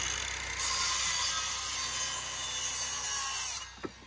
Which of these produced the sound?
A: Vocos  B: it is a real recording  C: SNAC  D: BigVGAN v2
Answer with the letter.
B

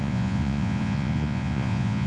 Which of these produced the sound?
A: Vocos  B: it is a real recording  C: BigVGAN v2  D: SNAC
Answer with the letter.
A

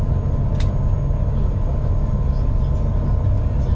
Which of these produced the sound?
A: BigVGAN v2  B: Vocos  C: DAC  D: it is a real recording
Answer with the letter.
D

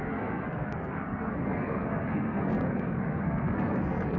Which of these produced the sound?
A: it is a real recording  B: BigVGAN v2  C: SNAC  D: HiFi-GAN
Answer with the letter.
C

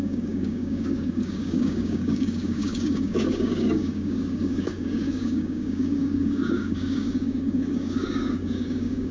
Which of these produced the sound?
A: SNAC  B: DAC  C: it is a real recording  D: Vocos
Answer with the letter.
B